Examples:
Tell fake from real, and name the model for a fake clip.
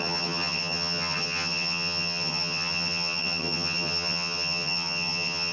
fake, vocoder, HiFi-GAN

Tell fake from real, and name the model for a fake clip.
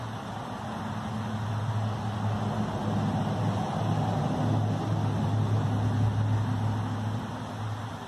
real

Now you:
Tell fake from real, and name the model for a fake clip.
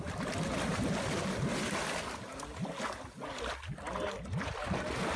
real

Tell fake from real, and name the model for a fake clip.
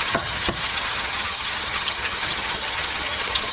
fake, vocoder, HiFi-GAN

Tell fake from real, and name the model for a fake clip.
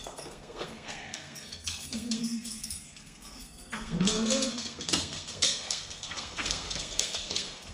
fake, codec, SNAC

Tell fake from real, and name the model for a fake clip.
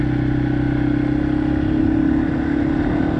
real